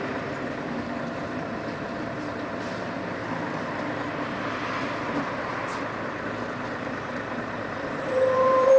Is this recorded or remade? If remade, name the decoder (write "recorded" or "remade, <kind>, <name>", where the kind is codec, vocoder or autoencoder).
remade, vocoder, BigVGAN v2